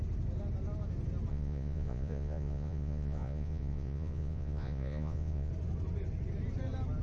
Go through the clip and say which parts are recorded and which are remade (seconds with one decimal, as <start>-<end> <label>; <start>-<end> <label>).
0.0-1.3 recorded; 1.3-5.5 remade; 5.5-7.0 recorded

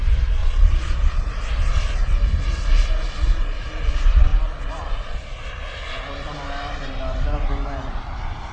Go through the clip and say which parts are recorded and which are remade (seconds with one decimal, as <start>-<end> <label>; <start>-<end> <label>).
0.0-0.4 recorded; 0.4-1.2 remade; 1.2-8.5 recorded